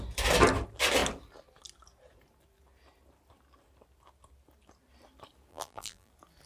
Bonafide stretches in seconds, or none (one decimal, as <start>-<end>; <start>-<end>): 0.0-5.5; 6.1-6.5